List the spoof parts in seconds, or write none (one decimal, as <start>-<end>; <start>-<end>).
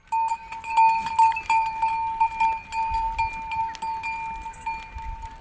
none